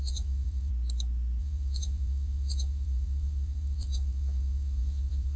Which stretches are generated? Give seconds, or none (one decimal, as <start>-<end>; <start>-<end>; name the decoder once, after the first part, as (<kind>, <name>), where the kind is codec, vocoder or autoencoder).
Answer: 0.0-0.7 (vocoder, WaveNeXt); 1.4-5.4